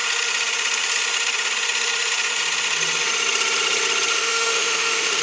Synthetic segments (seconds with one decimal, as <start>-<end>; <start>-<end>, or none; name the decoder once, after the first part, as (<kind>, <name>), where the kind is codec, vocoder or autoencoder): 4.1-5.2 (autoencoder, DAC-VAE)